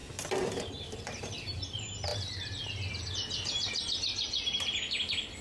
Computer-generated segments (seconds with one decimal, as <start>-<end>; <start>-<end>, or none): 0.8-2.1